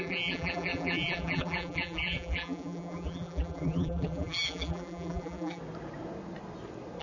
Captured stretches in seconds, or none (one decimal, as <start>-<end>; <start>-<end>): 5.6-7.0